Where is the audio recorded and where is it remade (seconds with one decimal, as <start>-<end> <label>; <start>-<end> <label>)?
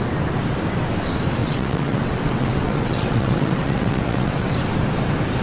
0.0-1.4 recorded; 1.4-4.6 remade; 4.6-5.4 recorded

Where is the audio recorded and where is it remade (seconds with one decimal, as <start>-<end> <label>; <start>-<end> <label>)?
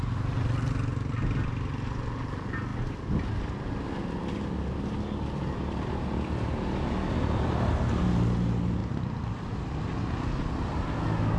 0.0-11.4 recorded